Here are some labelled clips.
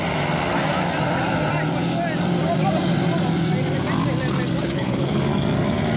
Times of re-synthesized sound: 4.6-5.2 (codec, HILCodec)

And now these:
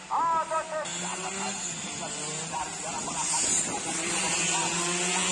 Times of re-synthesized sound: none

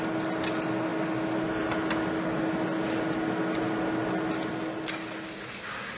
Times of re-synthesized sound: none

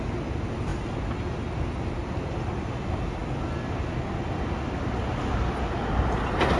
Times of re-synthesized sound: none

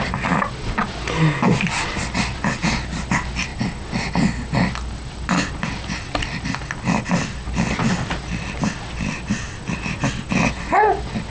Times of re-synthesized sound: none

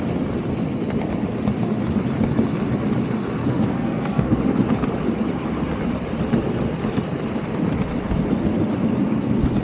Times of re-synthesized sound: 3.4-4.4 (codec, SNAC)

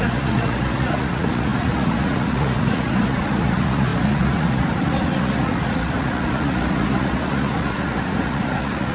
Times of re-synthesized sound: 0.0-8.9 (vocoder, Vocos)

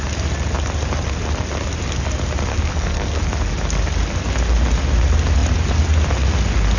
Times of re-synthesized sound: 2.5-3.2 (codec, SNAC)